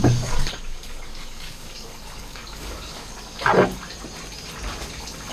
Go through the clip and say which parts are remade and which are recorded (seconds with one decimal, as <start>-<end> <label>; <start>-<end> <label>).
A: 0.0-3.5 remade; 3.5-5.3 recorded